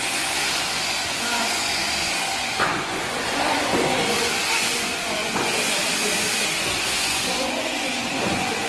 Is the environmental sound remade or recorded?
remade